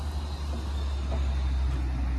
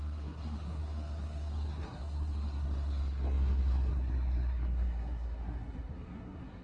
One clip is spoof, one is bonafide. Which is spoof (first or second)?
second